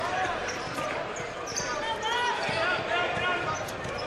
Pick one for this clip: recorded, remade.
remade